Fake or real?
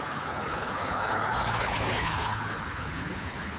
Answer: fake